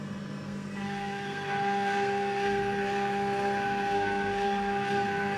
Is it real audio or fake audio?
fake